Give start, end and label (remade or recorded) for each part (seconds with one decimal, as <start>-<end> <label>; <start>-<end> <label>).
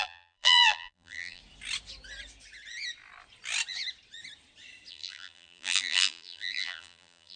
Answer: 0.0-1.4 remade; 1.4-4.9 recorded; 4.9-7.4 remade